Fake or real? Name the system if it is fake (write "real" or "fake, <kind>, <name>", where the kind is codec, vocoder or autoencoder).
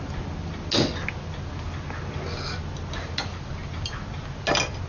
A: real